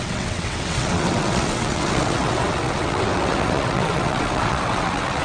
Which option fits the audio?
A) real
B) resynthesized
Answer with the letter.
B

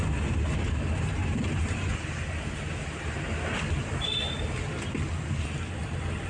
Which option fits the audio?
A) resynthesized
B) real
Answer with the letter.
B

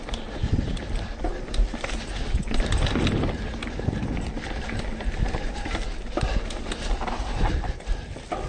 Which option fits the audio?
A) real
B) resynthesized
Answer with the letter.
A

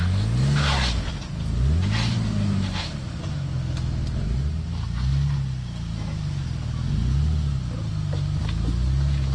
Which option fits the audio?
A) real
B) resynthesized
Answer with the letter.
A